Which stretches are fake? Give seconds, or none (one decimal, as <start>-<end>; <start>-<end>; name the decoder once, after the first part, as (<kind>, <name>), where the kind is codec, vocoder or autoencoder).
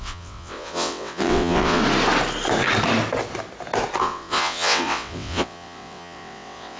0.0-1.8 (vocoder, WaveNeXt); 4.0-6.8